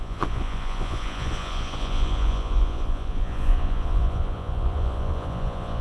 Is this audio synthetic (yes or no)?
yes